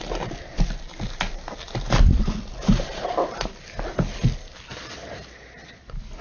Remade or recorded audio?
recorded